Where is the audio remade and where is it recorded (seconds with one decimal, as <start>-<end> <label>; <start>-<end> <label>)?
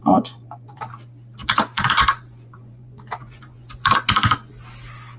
0.0-0.8 remade; 0.8-1.4 recorded; 1.4-4.5 remade; 4.5-5.2 recorded